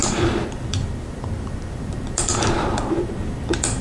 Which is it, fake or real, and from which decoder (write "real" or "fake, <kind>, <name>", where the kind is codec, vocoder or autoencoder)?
fake, vocoder, BigVGAN v2